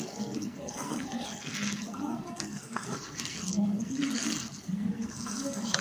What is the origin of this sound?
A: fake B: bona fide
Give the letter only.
A